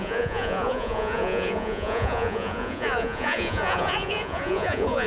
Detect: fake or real fake